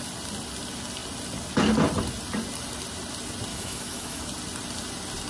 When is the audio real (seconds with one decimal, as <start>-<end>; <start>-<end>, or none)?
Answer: 0.0-3.5; 4.2-5.3